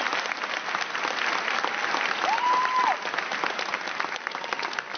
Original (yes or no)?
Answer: no